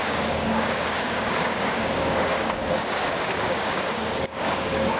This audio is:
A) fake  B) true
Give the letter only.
A